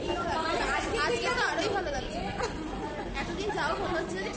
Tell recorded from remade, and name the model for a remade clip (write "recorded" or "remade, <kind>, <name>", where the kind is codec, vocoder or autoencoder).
recorded